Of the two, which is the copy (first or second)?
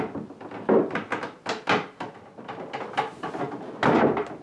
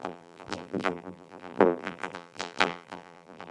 second